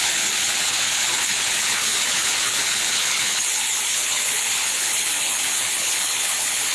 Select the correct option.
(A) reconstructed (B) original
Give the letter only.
A